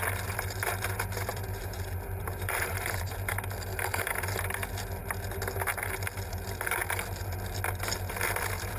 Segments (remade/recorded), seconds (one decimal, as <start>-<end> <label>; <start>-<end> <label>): 0.0-1.3 recorded; 1.3-3.1 remade; 3.1-8.8 recorded